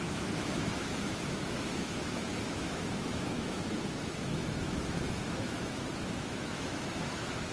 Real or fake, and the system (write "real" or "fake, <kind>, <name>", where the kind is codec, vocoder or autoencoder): fake, autoencoder, DAC-VAE